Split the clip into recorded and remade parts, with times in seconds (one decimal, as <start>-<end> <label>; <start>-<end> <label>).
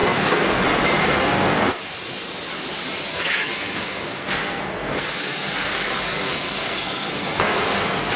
0.0-0.6 remade; 0.6-1.0 recorded; 1.0-1.8 remade; 1.8-3.1 recorded; 3.1-8.2 remade